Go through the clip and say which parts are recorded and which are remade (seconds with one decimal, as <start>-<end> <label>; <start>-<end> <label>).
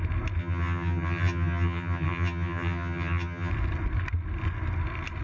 0.0-0.4 recorded; 0.4-3.5 remade; 3.5-5.2 recorded